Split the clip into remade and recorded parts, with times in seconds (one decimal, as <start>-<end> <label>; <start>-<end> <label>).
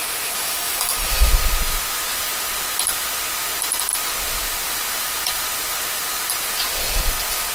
0.0-1.3 remade; 1.3-7.5 recorded